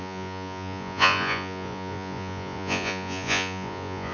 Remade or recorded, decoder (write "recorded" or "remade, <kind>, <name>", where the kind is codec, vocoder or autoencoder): remade, vocoder, Vocos